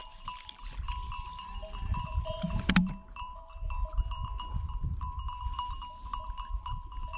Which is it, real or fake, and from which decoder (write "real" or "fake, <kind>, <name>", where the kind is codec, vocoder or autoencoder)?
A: fake, vocoder, BigVGAN v2